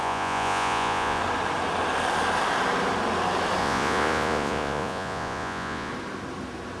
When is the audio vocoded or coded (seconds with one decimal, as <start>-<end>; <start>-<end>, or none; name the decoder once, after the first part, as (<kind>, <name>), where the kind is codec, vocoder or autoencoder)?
0.0-1.2 (vocoder, Vocos); 3.6-5.9